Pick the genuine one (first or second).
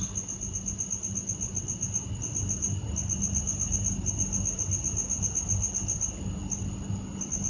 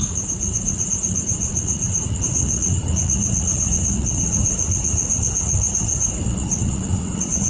first